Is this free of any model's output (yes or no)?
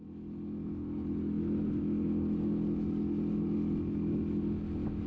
yes